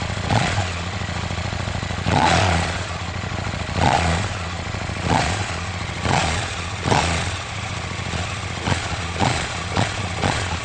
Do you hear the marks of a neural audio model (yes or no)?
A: yes